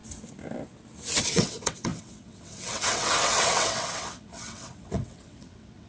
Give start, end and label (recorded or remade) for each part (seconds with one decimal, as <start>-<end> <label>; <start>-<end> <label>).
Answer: 0.0-1.2 recorded; 1.2-5.9 remade